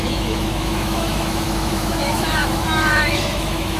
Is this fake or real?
fake